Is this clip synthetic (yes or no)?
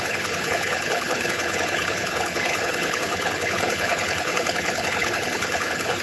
yes